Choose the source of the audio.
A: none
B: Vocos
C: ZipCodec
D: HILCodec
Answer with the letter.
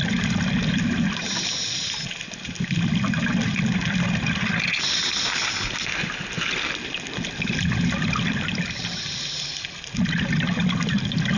A